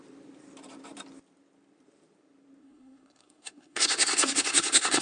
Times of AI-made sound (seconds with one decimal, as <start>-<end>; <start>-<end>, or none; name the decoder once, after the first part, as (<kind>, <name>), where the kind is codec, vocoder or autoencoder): 2.6-5.0 (codec, SNAC)